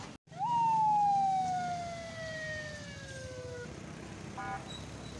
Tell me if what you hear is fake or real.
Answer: real